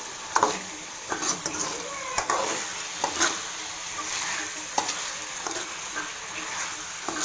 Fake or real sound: fake